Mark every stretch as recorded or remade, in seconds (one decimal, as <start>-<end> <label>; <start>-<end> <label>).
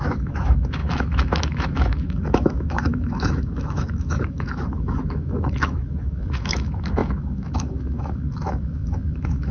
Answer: 0.0-9.5 remade